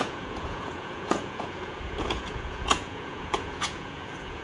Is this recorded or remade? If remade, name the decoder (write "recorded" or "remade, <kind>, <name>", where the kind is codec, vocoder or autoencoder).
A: remade, vocoder, Vocos